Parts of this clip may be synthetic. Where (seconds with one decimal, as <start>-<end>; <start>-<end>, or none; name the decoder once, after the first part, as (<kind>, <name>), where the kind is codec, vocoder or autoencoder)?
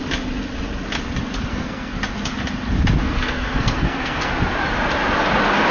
1.5-2.0 (codec, SNAC); 3.0-4.3